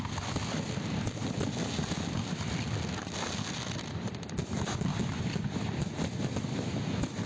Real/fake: real